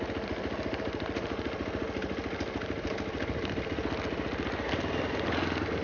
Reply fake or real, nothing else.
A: real